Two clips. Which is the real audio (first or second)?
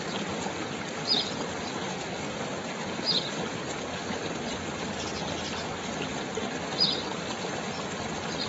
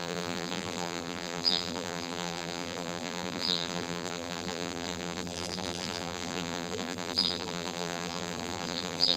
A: first